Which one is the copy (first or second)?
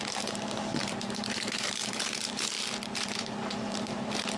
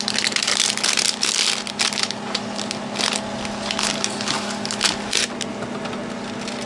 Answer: first